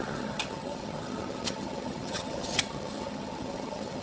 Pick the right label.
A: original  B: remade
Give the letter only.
B